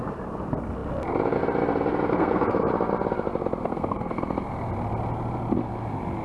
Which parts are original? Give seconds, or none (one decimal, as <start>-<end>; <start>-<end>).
0.0-2.1; 2.7-3.6; 4.2-6.2